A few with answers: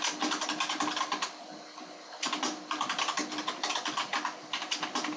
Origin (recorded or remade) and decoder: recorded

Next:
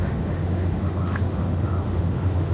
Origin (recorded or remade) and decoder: remade, autoencoder, DAC-VAE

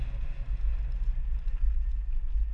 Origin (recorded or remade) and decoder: recorded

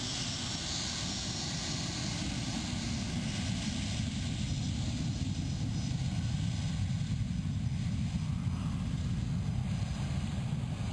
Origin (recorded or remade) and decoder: recorded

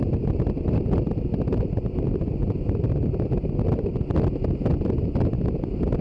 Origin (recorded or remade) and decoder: recorded